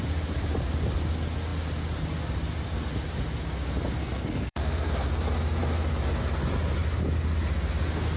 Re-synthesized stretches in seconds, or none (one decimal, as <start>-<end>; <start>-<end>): 4.0-4.9